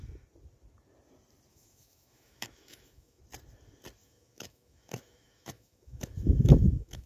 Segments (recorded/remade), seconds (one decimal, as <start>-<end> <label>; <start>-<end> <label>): 0.0-1.5 recorded; 1.5-3.2 remade; 3.2-4.0 recorded; 4.0-7.1 remade